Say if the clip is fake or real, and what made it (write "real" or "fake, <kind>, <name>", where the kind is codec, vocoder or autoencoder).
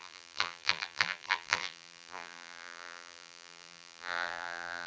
fake, vocoder, BigVGAN v2